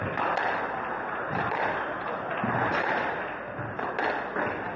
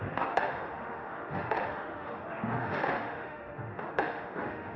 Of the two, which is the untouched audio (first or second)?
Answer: first